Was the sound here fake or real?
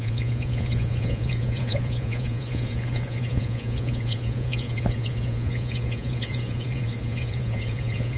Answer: fake